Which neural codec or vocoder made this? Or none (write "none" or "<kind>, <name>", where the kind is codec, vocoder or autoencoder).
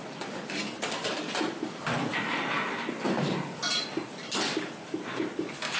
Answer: none